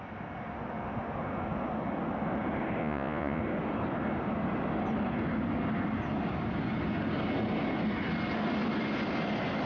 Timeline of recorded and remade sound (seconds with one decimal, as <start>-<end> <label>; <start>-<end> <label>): 0.0-2.8 recorded; 2.8-3.4 remade; 3.4-9.7 recorded